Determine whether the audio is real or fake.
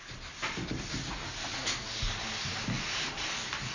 real